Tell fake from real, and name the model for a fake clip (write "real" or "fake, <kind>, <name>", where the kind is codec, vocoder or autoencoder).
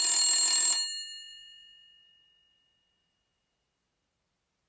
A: real